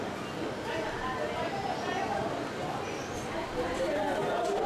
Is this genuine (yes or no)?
no